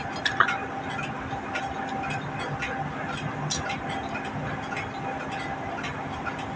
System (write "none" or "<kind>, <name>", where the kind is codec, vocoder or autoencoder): none